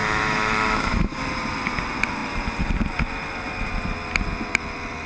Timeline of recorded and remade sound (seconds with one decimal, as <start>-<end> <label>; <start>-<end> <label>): 0.0-1.2 remade; 1.2-5.1 recorded